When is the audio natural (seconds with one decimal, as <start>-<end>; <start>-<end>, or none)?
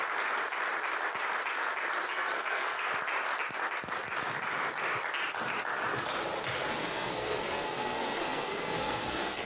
0.0-2.1; 2.9-6.8